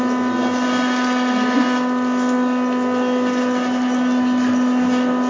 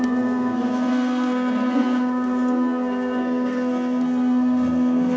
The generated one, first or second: second